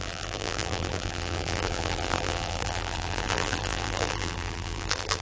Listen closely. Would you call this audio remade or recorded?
remade